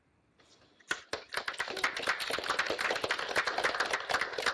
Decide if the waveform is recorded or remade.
recorded